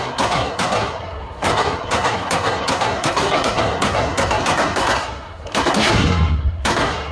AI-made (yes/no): yes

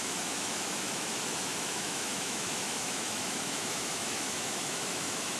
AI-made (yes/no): yes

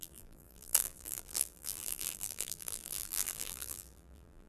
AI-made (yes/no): yes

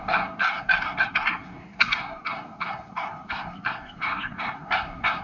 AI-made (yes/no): yes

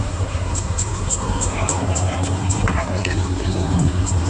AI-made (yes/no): yes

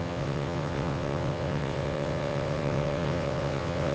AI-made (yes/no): yes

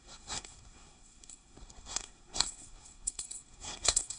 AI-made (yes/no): yes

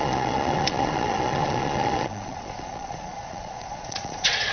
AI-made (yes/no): yes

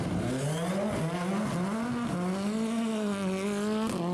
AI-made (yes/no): no